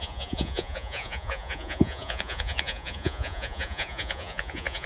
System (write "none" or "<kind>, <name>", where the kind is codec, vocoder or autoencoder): vocoder, Vocos